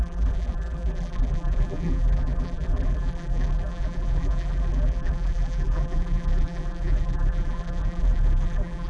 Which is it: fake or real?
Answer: fake